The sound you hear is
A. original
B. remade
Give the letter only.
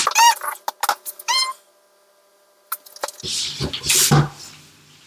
A